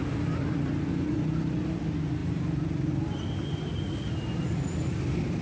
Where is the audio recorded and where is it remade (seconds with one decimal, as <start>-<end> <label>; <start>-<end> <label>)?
0.0-5.4 recorded